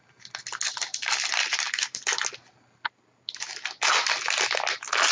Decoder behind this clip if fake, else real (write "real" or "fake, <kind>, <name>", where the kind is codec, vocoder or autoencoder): real